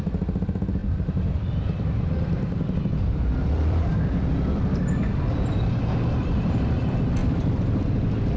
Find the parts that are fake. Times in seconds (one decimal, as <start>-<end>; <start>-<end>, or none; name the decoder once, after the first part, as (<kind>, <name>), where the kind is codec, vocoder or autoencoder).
0.8-5.7 (vocoder, BigVGAN v2); 6.2-6.8; 7.2-7.8